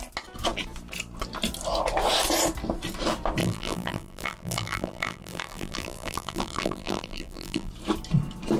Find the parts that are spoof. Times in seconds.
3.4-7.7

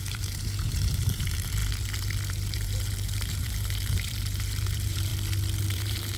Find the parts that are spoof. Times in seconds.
0.0-1.6; 2.3-5.1; 5.6-6.2

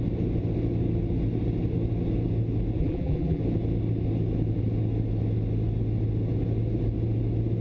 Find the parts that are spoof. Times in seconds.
2.8-3.4

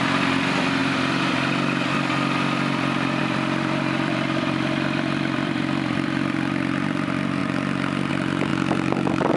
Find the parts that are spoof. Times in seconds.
0.0-0.8; 3.2-7.4; 8.1-8.5

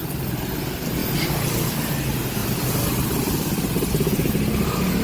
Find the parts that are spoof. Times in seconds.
1.0-1.9; 2.4-4.3

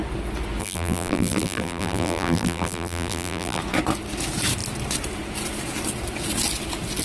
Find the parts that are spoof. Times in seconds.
0.6-3.6

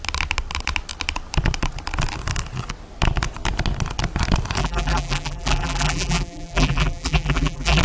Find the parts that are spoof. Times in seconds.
4.6-7.8